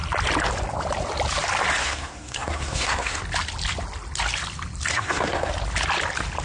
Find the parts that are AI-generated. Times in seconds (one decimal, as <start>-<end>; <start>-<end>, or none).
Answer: 1.8-3.2; 4.9-5.5